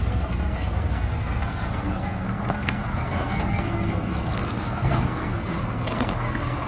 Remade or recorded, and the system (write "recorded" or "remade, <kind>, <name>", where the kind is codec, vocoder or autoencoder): remade, codec, SNAC